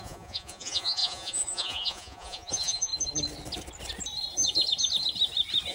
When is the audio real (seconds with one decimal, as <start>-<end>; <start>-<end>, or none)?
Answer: 2.9-5.7